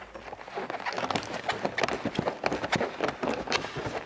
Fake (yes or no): no